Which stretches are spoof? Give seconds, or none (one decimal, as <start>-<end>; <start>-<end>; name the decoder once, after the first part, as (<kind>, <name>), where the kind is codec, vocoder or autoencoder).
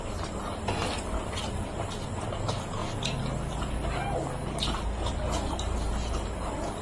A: 0.0-0.8 (vocoder, BigVGAN v2); 1.4-2.8; 5.1-6.8